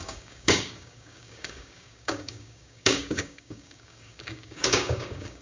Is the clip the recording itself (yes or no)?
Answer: no